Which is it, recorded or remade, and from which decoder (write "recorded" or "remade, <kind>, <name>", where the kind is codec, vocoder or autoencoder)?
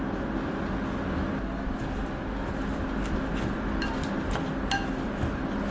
recorded